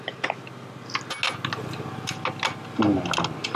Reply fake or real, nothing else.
real